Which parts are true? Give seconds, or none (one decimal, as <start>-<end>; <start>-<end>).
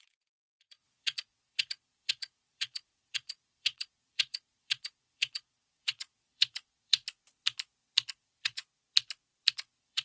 7.0-8.1; 8.6-9.5